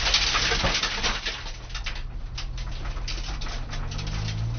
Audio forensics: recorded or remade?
recorded